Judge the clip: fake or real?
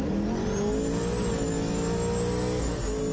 real